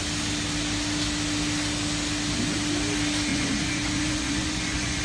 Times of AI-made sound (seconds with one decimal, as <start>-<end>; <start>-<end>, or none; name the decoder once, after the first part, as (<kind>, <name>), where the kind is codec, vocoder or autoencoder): 3.3-5.0 (vocoder, Vocos)